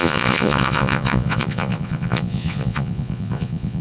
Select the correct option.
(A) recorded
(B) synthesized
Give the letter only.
B